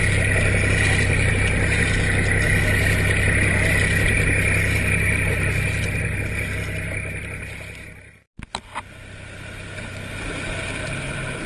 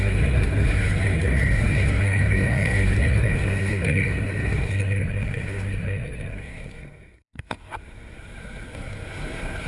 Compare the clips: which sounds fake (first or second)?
second